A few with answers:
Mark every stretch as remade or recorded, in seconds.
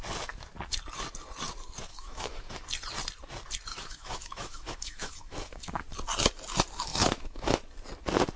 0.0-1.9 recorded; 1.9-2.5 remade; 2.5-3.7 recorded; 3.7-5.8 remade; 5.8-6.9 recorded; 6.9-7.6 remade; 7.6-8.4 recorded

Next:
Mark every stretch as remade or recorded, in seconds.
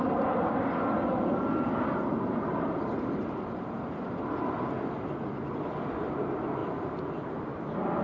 0.0-2.1 recorded; 2.1-3.2 remade; 3.2-8.0 recorded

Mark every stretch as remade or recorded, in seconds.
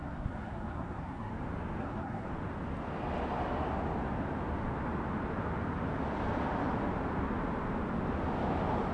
0.0-1.3 remade; 1.3-1.8 recorded; 1.8-2.3 remade; 2.3-8.9 recorded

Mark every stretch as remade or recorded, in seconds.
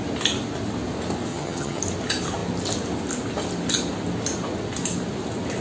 0.0-1.3 recorded; 1.3-1.8 remade; 1.8-5.6 recorded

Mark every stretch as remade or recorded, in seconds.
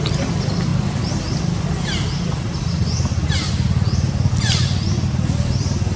0.0-6.0 recorded